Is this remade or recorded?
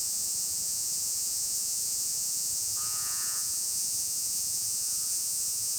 remade